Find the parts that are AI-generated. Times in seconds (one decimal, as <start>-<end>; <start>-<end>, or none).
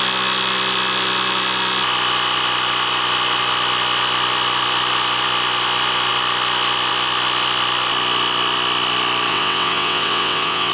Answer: 9.3-10.7